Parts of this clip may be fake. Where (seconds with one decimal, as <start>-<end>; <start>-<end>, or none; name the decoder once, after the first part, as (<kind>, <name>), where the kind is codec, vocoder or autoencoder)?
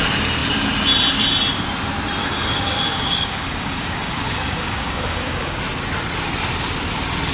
2.2-5.6 (codec, DAC)